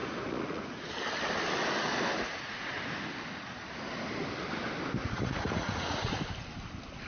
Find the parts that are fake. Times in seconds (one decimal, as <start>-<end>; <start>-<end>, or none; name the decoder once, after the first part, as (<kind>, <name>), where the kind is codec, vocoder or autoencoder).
0.0-0.9 (vocoder, Vocos); 2.1-2.7; 5.0-6.2